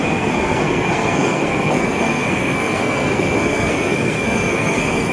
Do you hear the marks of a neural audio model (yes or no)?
yes